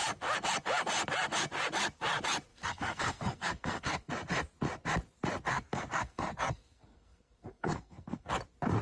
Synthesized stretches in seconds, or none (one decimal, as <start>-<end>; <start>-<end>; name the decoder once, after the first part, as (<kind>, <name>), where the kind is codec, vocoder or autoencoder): 2.5-4.1 (codec, SNAC); 5.5-8.3